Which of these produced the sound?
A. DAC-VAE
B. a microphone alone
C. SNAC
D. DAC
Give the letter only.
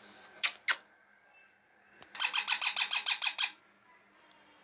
B